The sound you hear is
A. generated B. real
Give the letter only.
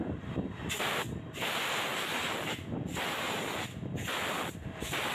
A